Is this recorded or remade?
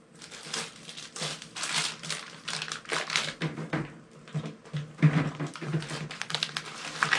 recorded